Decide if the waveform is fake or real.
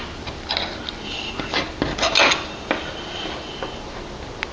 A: real